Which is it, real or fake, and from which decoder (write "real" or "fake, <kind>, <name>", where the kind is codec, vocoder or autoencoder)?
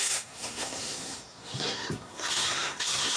fake, codec, SNAC